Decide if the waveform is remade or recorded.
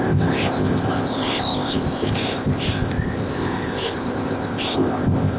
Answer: remade